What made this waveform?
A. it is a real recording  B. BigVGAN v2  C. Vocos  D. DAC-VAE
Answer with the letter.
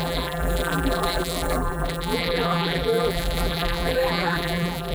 B